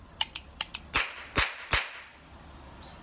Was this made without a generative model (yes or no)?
yes